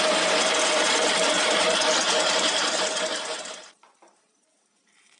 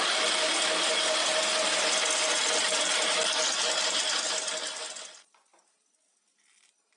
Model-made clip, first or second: first